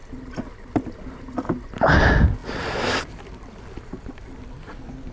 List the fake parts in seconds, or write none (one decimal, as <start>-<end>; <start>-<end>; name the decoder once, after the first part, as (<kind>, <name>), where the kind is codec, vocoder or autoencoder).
none